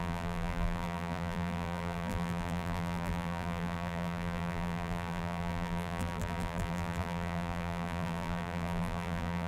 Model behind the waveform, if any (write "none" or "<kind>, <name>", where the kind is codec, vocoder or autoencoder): vocoder, BigVGAN v2